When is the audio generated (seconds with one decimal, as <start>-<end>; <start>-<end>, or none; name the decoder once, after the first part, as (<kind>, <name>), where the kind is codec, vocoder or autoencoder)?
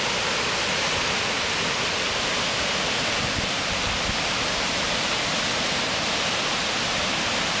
4.6-7.6 (vocoder, BigVGAN v2)